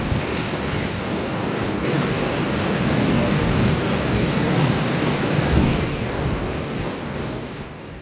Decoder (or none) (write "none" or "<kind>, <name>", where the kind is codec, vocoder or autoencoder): codec, DAC